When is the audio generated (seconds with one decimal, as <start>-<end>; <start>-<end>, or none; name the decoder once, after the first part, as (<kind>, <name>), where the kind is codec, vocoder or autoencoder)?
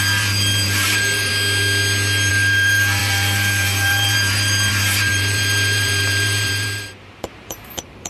0.0-1.3 (vocoder, BigVGAN v2); 2.3-8.1